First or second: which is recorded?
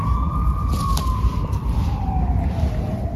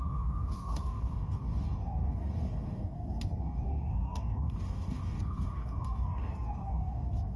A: first